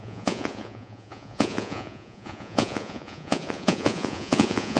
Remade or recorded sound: remade